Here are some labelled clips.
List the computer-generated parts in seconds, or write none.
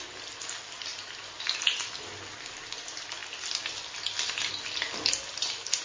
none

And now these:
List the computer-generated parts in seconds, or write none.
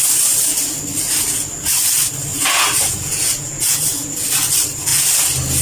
2.3-4.1 (vocoder, Vocos)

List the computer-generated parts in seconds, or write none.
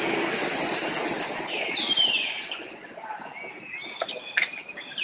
2.2-2.7 (vocoder, Vocos)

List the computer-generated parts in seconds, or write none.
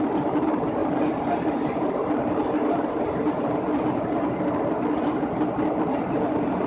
none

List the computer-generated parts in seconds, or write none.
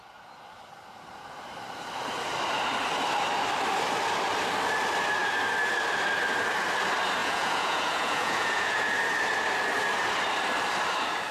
7.2-8.9 (vocoder, Vocos)